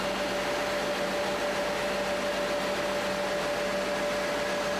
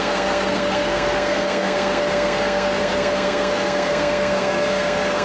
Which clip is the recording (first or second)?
first